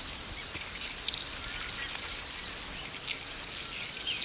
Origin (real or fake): real